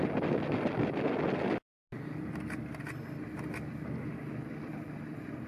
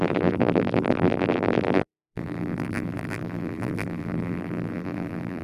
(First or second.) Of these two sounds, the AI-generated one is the second